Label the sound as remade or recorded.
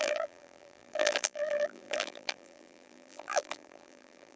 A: remade